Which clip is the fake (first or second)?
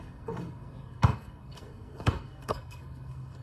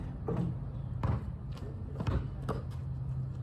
first